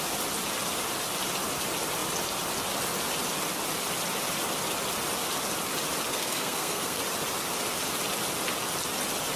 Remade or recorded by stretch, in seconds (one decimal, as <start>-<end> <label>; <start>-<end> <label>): 0.0-6.1 recorded; 6.1-7.0 remade; 7.0-9.4 recorded